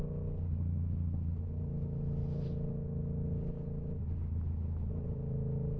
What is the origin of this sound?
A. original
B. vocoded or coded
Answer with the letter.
A